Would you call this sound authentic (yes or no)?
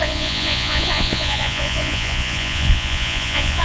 no